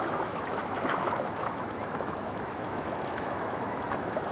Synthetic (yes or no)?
yes